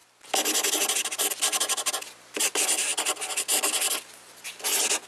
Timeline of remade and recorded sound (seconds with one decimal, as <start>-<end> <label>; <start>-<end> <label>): 0.0-5.1 recorded